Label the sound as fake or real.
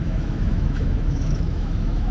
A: fake